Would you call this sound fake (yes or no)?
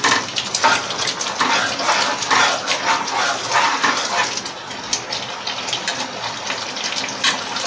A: no